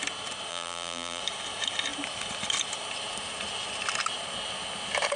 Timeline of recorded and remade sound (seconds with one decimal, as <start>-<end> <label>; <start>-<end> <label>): 0.0-0.5 recorded; 0.5-1.2 remade; 1.2-5.2 recorded